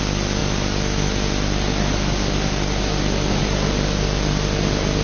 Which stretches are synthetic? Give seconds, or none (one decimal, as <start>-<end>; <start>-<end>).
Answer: none